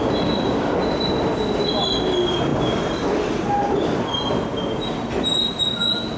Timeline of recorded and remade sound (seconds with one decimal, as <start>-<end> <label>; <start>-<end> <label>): 0.0-6.2 recorded